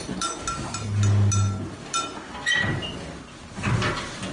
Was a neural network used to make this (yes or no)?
no